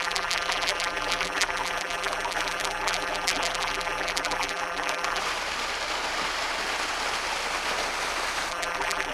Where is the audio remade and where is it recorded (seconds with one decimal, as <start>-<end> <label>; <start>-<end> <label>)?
0.0-5.2 remade; 5.2-8.5 recorded; 8.5-9.1 remade